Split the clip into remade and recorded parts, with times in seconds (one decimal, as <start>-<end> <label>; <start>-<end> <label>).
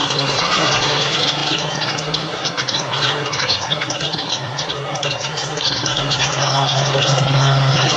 0.0-8.0 remade